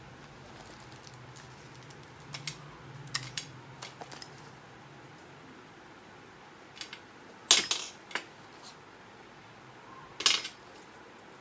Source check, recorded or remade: recorded